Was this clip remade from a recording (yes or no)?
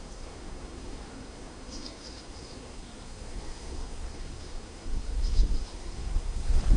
yes